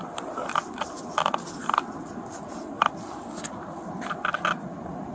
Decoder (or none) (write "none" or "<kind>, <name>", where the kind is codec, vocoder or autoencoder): none